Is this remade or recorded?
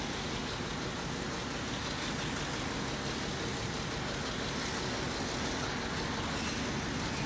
recorded